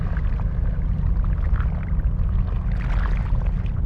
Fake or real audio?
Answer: real